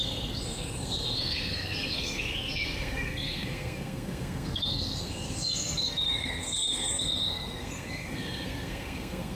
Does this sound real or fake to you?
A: fake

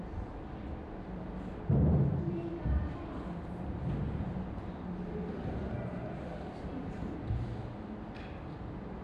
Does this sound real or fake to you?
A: real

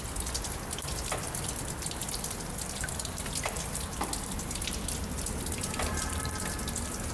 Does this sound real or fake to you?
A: real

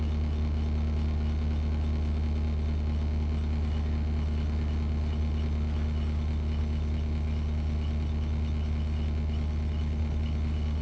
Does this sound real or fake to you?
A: real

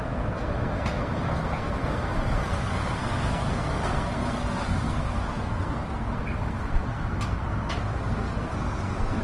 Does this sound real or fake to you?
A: fake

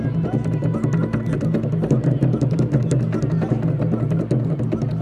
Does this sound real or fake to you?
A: real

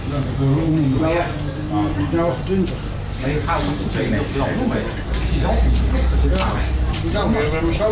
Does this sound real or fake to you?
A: real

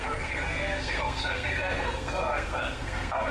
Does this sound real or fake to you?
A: fake